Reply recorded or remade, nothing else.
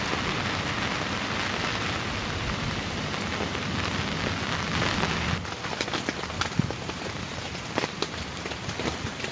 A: recorded